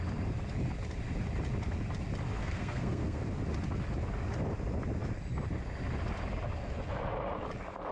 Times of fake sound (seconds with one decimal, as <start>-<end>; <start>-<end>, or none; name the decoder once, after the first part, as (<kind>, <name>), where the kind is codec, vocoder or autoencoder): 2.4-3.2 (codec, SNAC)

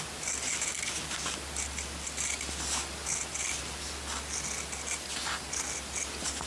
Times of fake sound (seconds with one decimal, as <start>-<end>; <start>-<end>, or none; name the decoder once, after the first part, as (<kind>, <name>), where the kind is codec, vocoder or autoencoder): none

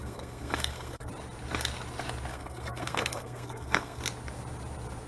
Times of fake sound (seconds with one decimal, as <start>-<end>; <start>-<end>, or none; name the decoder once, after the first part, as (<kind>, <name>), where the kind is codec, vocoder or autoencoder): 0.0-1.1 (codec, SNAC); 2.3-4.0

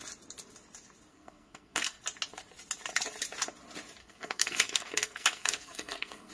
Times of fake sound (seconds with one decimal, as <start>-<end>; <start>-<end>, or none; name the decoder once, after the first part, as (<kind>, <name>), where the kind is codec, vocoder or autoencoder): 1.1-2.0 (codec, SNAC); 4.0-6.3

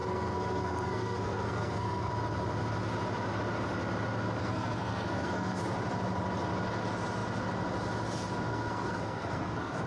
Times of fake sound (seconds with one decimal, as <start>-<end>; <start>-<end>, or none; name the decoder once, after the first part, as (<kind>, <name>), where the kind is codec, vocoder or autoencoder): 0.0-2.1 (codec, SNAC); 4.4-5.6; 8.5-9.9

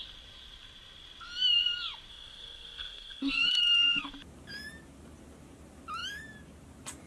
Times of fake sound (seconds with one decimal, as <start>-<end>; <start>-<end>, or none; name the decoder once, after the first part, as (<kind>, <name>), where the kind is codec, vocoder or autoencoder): 2.1-4.1 (codec, SNAC)

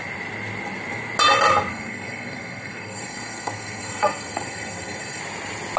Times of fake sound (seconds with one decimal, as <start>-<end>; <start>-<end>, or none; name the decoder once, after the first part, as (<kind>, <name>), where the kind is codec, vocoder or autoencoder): 1.7-5.2 (codec, SNAC)